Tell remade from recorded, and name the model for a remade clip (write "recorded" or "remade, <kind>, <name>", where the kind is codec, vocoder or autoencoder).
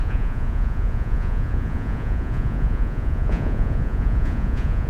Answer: remade, vocoder, Vocos